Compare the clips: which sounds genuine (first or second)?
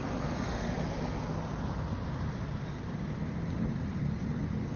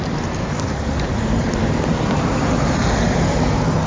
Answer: first